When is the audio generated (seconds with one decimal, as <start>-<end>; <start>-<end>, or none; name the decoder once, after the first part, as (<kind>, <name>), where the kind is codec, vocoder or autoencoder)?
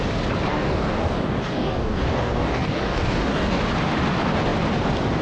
0.5-3.6 (codec, DAC)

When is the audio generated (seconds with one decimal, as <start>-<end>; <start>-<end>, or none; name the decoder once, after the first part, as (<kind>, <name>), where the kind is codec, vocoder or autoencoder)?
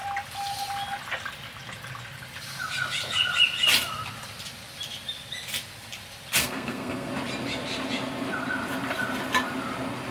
6.4-7.1 (codec, SNAC)